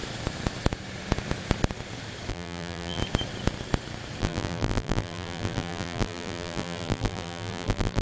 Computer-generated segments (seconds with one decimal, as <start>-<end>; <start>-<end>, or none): 2.3-3.0; 4.2-8.0